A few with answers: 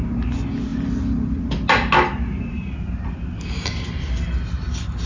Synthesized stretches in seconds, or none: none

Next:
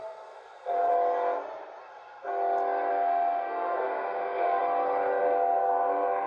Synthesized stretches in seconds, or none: 0.0-0.9 (codec, SNAC); 1.8-2.3; 2.9-4.6; 5.2-6.3

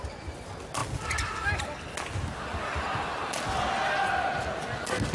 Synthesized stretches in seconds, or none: none

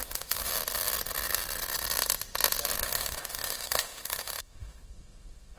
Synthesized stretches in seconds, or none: 0.0-0.5 (autoencoder, DAC-VAE); 2.8-5.6

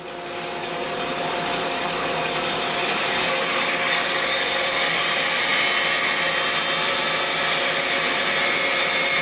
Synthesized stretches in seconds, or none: 0.6-5.0 (codec, DAC)

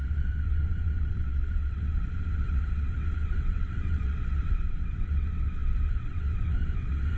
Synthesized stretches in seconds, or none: 0.0-7.2 (vocoder, WaveNeXt)

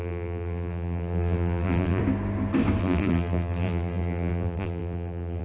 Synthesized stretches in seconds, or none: 0.0-2.0 (vocoder, BigVGAN v2); 2.8-5.4